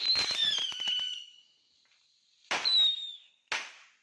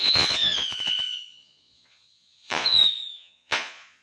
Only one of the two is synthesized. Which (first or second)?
second